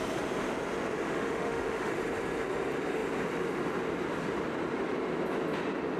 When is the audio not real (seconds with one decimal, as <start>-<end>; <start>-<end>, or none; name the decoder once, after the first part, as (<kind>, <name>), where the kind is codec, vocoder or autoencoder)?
1.1-1.9 (autoencoder, DAC-VAE)